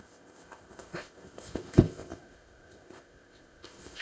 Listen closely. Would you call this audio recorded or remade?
remade